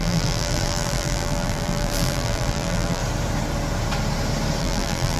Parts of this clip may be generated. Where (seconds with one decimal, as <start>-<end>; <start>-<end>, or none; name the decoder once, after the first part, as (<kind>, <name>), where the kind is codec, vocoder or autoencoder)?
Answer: 0.0-3.0 (vocoder, BigVGAN v2); 4.6-5.2